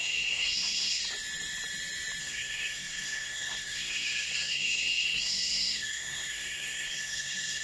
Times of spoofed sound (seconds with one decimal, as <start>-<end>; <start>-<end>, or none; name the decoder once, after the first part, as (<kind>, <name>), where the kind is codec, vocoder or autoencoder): 0.0-1.0 (codec, SNAC); 2.2-7.6